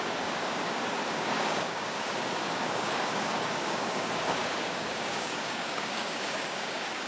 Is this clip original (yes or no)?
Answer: no